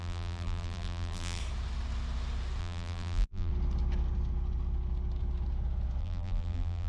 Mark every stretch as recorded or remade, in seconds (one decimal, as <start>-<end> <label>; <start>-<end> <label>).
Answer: 0.0-1.4 remade; 1.4-2.6 recorded; 2.6-3.5 remade; 3.5-6.0 recorded; 6.0-6.9 remade